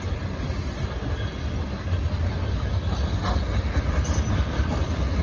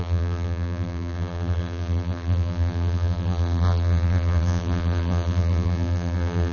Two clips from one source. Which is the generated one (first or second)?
second